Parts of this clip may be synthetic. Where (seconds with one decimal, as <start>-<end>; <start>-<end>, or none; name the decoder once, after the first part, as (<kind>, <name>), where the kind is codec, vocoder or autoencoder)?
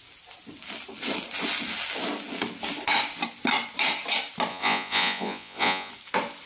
4.5-5.9 (vocoder, Vocos)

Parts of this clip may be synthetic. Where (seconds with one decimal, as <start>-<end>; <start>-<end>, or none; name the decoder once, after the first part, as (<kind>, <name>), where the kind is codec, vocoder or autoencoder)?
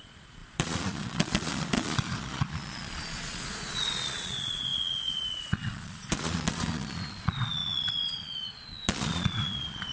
0.0-9.9 (vocoder, Vocos)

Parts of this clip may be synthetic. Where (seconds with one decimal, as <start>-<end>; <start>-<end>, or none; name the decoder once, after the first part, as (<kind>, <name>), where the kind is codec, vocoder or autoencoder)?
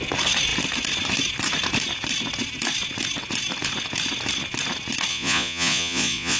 5.1-6.4 (vocoder, Vocos)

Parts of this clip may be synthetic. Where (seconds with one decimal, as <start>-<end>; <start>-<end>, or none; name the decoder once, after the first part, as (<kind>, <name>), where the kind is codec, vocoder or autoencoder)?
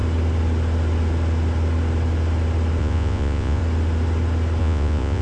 2.8-3.6 (vocoder, Vocos); 4.6-5.2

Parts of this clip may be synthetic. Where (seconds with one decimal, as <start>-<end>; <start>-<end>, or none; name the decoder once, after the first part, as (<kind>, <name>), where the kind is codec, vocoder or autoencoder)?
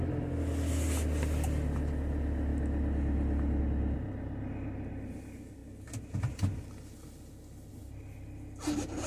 none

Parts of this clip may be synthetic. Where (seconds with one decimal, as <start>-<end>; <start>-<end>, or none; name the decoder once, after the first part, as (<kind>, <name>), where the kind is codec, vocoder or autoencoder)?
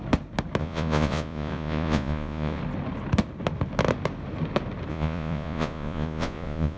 0.6-2.6 (vocoder, Vocos); 4.9-6.8